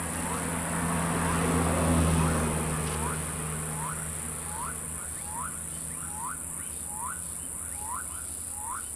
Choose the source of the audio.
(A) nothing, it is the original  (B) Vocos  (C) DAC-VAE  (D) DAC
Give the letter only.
A